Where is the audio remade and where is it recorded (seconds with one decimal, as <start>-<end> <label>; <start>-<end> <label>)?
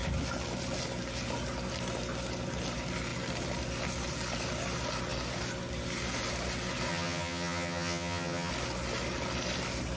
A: 0.0-6.9 recorded; 6.9-8.5 remade; 8.5-10.0 recorded